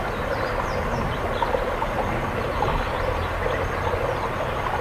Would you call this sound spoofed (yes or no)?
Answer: no